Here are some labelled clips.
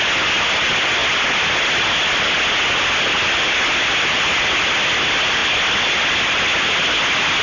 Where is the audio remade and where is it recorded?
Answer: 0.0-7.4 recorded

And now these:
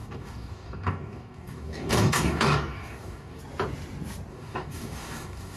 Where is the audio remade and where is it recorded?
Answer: 0.0-3.4 remade; 3.4-4.3 recorded; 4.3-5.6 remade

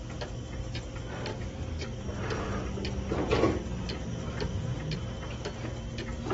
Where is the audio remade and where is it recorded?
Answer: 0.0-1.3 recorded; 1.3-2.0 remade; 2.0-6.3 recorded

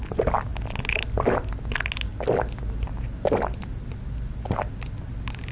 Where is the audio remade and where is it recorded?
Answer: 0.0-5.5 recorded